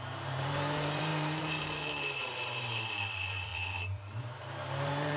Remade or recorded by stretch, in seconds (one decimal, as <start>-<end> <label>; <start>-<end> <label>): 0.0-5.2 remade